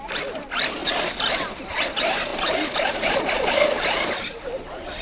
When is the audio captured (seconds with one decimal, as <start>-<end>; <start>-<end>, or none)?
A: 0.0-5.0